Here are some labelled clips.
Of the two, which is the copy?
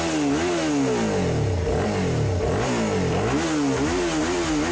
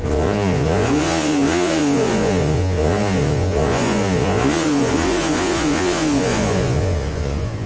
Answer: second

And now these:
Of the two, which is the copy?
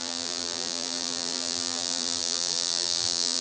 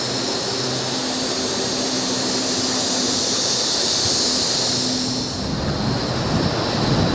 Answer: first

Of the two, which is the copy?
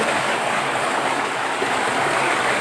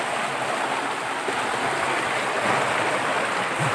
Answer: first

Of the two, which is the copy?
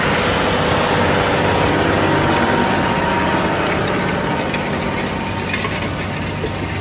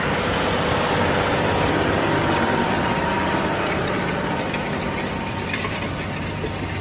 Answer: second